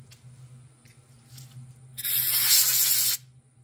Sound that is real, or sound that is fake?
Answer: real